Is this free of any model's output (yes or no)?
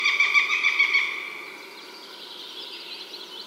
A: yes